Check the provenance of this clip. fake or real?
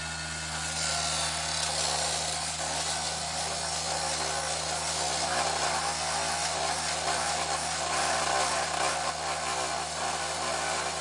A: real